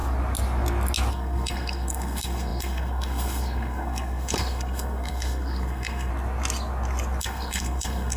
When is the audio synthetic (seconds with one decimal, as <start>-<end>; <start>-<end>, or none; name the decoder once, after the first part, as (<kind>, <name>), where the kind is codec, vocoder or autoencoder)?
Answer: 1.1-6.1 (codec, SNAC); 7.2-8.2